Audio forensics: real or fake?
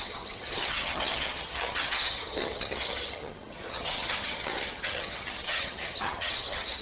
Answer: fake